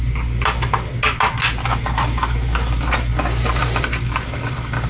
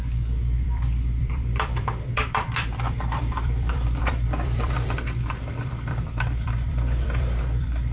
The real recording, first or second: first